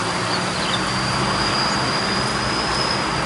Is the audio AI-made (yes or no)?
no